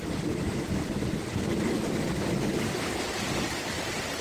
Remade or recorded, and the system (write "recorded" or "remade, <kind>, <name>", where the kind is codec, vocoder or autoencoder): recorded